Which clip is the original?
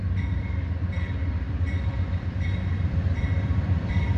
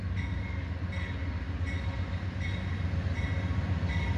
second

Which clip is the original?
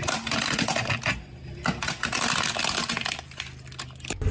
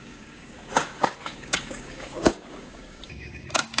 first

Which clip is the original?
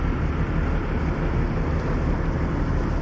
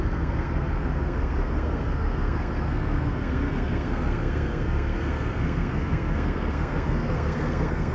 first